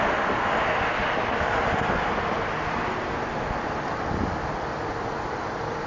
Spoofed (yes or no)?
no